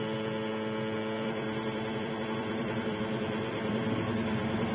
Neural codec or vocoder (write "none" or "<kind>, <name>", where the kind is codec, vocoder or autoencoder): vocoder, BigVGAN v2